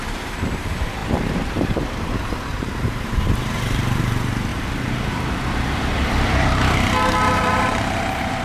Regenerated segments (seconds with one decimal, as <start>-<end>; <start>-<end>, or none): 0.0-4.5; 7.4-8.4